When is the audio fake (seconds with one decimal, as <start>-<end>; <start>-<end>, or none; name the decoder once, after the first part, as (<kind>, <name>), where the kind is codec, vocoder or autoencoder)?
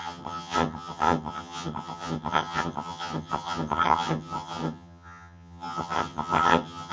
0.0-6.9 (vocoder, HiFi-GAN)